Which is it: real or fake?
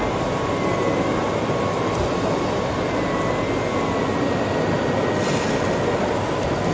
real